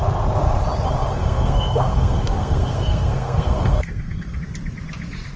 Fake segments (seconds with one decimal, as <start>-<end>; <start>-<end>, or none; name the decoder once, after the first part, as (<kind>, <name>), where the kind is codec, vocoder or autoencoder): 1.2-4.4 (codec, SNAC)